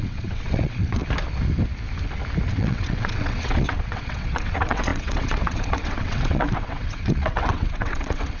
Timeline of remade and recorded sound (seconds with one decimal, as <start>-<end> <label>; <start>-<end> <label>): 0.0-1.0 remade; 1.0-2.5 recorded; 2.5-8.4 remade